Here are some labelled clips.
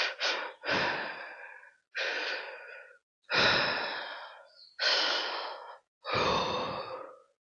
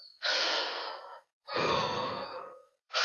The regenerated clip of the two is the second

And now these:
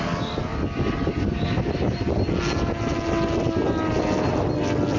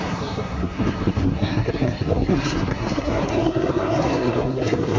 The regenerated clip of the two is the second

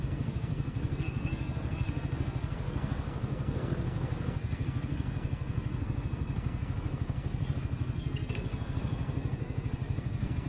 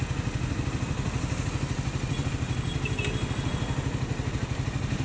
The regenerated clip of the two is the first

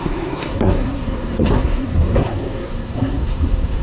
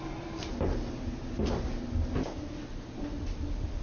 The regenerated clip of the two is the first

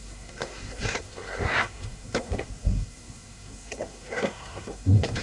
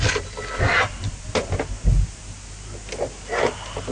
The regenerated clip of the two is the first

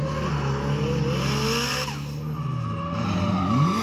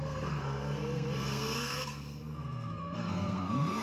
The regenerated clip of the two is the second